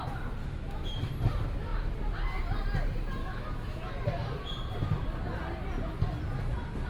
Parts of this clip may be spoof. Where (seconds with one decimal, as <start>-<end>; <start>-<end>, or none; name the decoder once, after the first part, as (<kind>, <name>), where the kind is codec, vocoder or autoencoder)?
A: 0.4-1.1 (autoencoder, DAC-VAE); 3.2-3.9